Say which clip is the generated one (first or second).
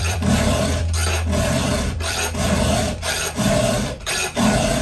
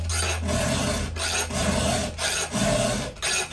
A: first